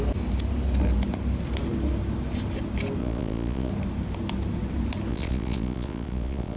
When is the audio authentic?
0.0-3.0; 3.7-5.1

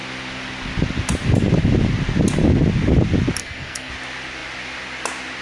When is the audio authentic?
0.0-3.4; 3.9-5.4